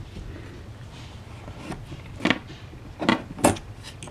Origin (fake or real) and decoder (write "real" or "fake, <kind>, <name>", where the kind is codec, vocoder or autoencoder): real